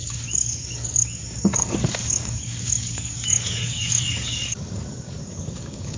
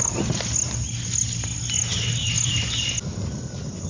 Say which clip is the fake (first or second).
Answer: first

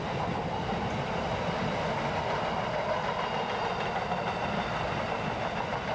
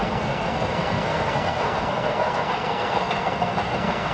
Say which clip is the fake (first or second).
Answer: second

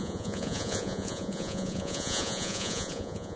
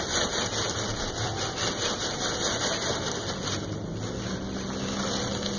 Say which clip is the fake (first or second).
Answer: first